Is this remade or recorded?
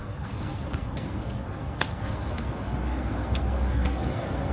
remade